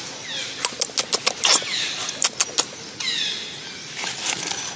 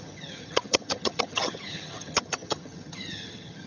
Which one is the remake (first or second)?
second